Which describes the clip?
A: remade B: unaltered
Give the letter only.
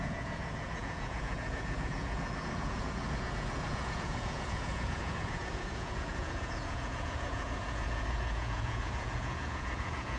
A